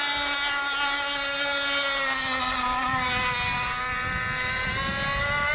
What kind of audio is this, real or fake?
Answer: real